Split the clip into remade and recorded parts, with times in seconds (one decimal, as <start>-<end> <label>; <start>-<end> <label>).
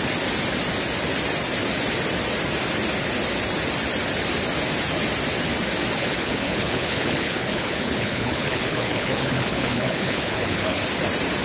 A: 0.0-6.0 recorded; 6.0-10.8 remade; 10.8-11.4 recorded